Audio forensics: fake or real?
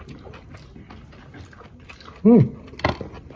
real